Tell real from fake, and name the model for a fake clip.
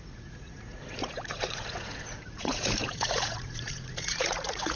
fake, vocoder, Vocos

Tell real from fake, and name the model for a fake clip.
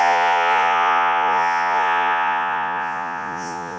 fake, vocoder, Vocos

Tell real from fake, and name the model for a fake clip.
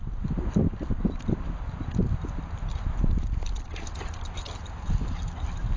real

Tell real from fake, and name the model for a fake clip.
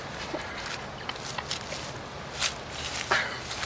real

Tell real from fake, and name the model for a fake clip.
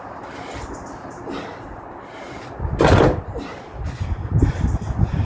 real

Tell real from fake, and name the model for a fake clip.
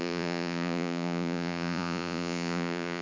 fake, vocoder, Vocos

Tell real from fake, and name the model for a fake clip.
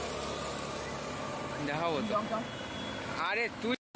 real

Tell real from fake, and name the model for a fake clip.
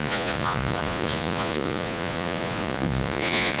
fake, vocoder, Vocos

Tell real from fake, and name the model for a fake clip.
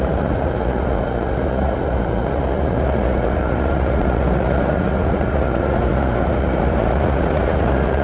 fake, vocoder, Vocos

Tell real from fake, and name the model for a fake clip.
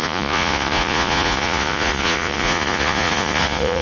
fake, vocoder, Vocos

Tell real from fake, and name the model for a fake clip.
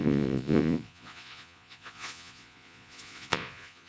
fake, vocoder, Vocos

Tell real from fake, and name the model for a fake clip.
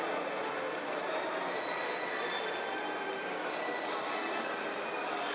real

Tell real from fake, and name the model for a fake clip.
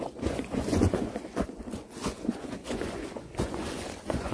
fake, vocoder, Vocos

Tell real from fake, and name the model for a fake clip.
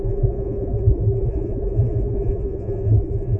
fake, vocoder, Vocos